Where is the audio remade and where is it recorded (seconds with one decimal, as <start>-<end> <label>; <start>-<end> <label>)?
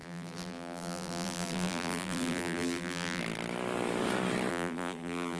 0.0-3.2 remade; 3.2-4.5 recorded; 4.5-5.4 remade